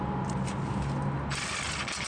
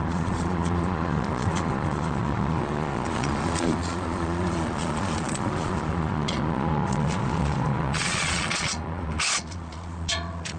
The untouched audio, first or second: first